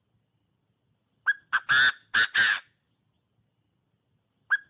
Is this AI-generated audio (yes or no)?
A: no